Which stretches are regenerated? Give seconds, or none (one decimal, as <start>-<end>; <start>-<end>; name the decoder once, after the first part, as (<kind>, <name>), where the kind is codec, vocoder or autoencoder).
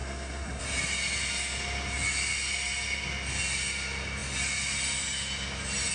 0.0-0.6 (codec, SNAC)